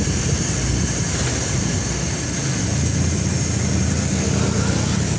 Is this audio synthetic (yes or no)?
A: no